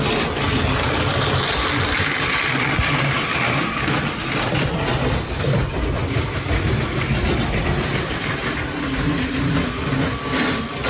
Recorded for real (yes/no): yes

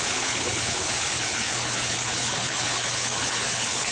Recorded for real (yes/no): no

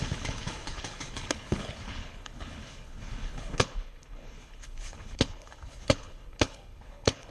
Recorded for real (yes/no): no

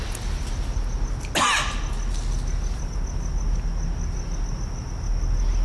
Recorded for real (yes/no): yes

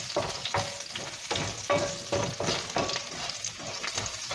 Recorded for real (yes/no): yes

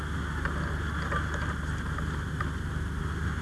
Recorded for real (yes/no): yes